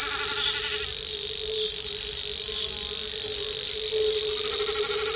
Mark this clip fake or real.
real